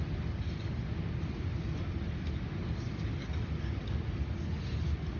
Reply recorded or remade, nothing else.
recorded